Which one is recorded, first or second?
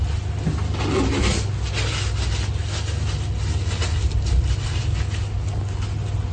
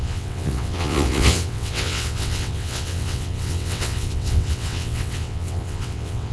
first